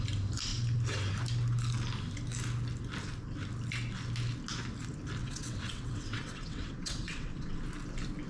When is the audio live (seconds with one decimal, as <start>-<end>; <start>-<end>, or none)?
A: 0.0-5.2; 7.6-8.3